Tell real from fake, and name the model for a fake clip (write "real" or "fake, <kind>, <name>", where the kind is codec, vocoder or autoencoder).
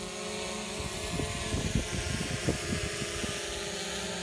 real